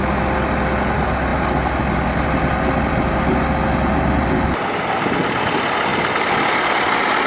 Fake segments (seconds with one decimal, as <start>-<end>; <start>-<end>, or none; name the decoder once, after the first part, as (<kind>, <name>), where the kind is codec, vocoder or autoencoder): none